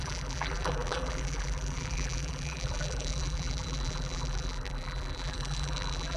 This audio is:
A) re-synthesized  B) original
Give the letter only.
A